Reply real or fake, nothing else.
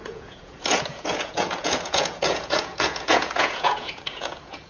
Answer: fake